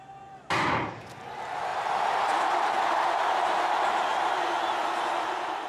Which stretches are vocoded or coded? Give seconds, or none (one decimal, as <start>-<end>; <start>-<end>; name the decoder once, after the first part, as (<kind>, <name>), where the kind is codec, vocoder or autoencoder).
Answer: 1.7-3.2 (vocoder, BigVGAN v2)